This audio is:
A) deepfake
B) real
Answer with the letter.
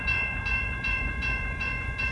A